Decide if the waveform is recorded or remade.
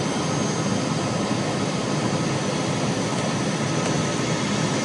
recorded